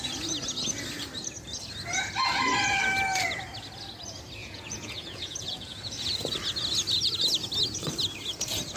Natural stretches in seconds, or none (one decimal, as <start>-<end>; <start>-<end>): 0.0-4.4; 6.1-8.8